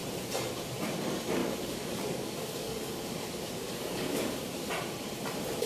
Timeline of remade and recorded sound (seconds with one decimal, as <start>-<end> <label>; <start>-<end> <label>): 0.0-1.4 recorded; 1.4-4.6 remade; 4.6-5.7 recorded